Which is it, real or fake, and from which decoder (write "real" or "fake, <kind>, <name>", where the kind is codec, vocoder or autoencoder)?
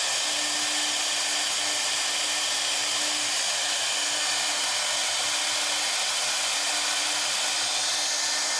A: real